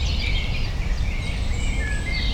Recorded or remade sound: remade